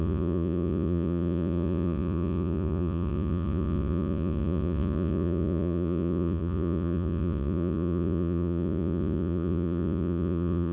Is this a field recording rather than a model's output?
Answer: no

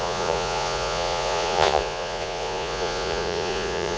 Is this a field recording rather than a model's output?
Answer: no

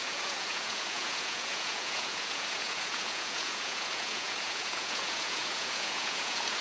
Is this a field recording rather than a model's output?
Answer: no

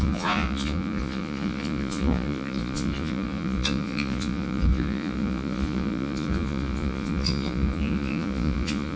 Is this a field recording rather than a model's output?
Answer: no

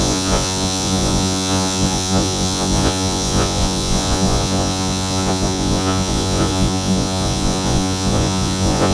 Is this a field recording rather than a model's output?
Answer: no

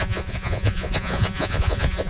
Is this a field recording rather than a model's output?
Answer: no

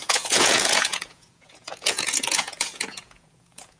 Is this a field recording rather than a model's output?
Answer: no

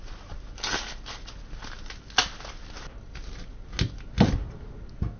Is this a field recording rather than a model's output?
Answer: yes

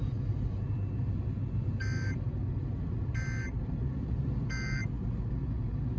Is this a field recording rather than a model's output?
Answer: yes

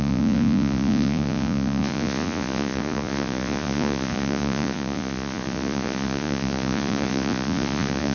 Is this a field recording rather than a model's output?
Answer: no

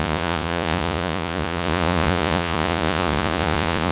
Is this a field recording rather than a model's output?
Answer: no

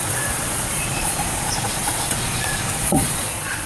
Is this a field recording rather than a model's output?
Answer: no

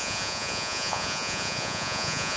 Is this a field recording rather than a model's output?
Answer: no